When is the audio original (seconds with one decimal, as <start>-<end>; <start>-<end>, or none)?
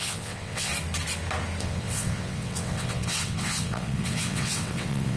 0.7-1.6